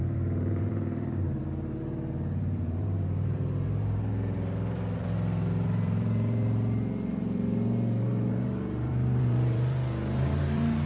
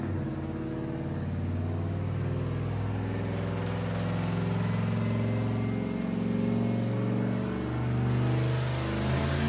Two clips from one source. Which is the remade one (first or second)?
first